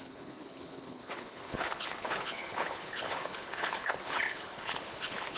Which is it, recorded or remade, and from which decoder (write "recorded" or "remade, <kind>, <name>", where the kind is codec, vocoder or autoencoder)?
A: remade, codec, HILCodec